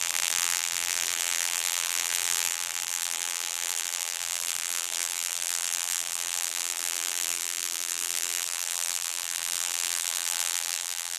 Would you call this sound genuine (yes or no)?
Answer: no